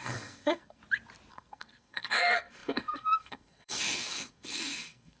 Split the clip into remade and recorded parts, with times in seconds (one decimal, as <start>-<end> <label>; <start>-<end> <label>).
0.0-0.8 remade; 0.8-1.3 recorded; 1.3-5.2 remade